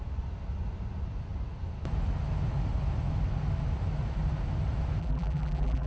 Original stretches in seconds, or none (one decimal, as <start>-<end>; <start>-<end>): 0.0-5.0

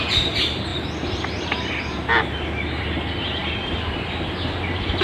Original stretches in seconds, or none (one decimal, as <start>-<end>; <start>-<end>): 0.0-0.7; 1.8-3.4; 4.0-5.0

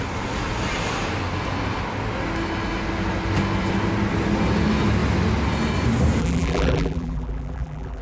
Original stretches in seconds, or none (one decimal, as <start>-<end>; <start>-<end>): 0.0-6.2

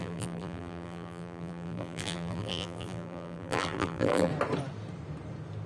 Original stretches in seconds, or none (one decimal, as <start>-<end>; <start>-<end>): 4.3-5.7